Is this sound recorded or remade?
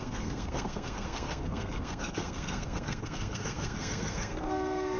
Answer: remade